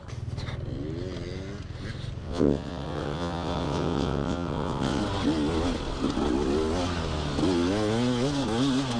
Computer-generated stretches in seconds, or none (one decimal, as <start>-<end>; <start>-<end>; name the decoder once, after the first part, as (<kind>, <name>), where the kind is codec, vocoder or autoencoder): 2.2-5.0 (vocoder, WaveNeXt)